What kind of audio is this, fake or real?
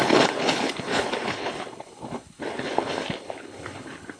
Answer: fake